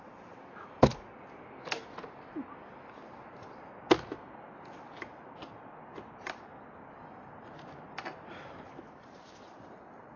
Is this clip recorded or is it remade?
recorded